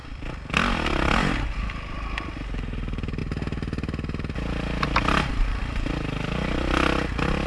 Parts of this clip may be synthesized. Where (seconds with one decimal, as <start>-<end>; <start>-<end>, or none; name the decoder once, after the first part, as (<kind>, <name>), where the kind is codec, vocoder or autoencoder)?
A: none